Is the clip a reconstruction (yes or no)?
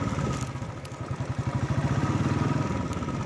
no